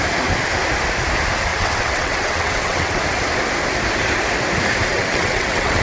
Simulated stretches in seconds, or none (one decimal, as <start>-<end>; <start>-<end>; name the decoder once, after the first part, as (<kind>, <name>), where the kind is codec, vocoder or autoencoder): 1.5-3.0 (vocoder, WaveNeXt); 4.9-5.8